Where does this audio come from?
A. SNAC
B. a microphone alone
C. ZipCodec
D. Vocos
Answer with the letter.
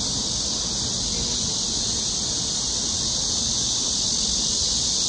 B